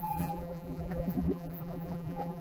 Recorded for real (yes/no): no